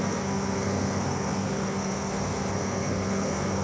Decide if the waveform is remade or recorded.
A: remade